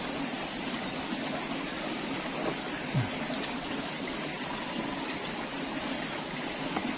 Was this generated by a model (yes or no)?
no